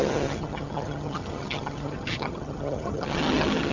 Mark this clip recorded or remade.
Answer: remade